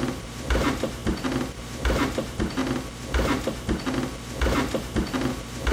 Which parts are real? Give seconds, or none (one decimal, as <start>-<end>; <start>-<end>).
1.0-1.5; 2.6-5.3